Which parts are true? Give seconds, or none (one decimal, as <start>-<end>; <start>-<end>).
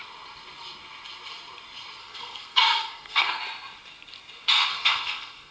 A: 0.0-2.0; 3.4-4.7